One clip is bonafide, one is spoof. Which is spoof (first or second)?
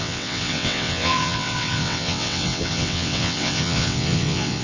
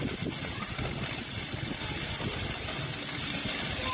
first